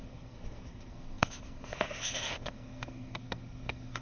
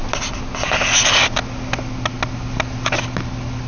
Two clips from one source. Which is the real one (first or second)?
second